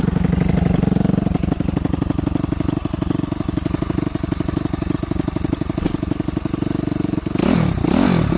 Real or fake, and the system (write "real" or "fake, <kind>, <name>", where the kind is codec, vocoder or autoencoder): real